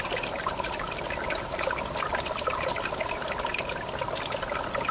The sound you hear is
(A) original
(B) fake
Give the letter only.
A